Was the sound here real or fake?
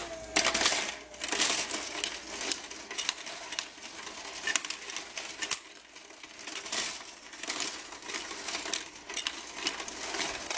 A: real